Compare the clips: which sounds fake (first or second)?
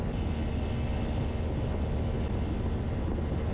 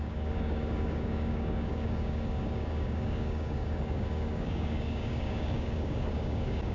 second